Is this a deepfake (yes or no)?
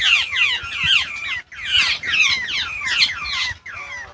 no